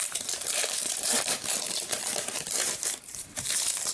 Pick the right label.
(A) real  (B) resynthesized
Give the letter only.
B